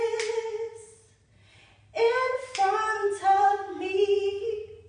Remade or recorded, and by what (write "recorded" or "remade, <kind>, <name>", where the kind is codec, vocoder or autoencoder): recorded